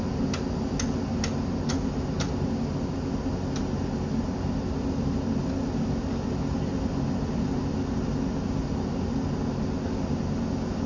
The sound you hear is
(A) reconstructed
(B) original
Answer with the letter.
B